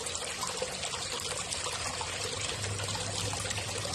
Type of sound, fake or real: real